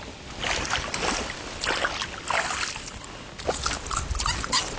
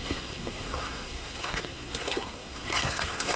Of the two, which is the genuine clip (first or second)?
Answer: first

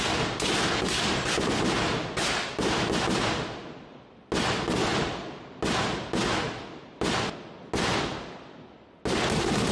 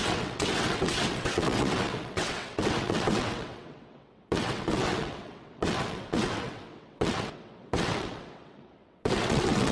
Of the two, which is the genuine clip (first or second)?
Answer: first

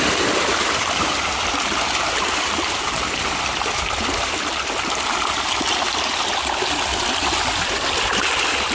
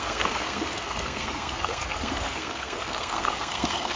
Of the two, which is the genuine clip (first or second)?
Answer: first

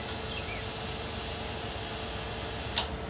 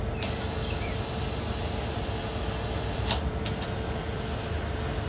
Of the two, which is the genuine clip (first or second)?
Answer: first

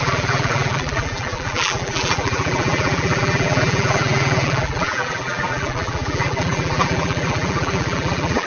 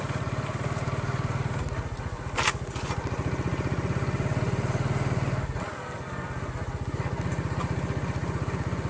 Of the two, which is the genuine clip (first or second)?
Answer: second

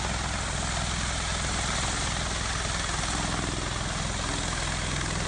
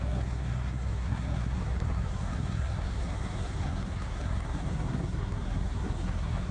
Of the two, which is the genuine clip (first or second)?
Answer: first